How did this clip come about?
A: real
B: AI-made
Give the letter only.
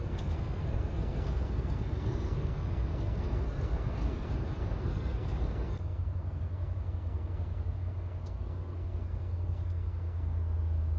B